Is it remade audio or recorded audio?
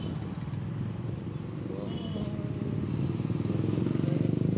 recorded